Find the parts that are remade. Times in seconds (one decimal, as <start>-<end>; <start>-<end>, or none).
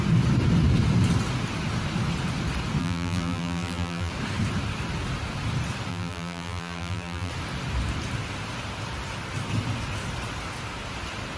2.8-4.1; 5.9-7.3